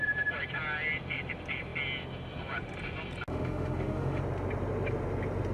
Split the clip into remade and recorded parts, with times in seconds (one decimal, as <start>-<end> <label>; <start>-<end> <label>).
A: 0.0-3.3 recorded; 3.3-4.2 remade; 4.2-5.5 recorded